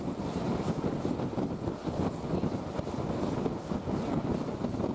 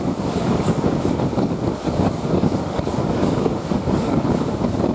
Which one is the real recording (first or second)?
first